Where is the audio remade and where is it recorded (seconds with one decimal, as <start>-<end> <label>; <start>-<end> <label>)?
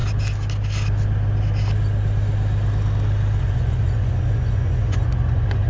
0.0-3.4 recorded; 3.4-5.7 remade